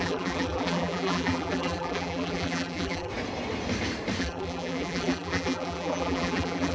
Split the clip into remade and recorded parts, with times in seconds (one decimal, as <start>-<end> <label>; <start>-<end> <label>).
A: 0.0-3.1 remade; 3.1-4.2 recorded; 4.2-6.7 remade